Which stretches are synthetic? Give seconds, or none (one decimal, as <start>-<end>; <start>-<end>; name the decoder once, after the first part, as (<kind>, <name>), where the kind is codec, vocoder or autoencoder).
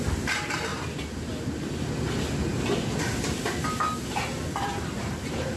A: 0.0-0.7 (vocoder, BigVGAN v2); 4.1-5.6